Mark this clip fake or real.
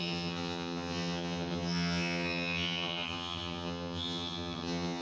fake